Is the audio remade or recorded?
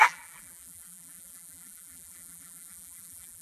remade